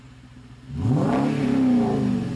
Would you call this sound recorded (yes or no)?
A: yes